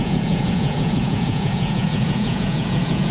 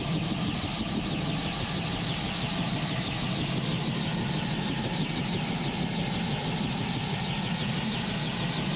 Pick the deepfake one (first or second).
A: first